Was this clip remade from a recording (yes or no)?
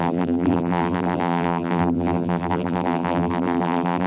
yes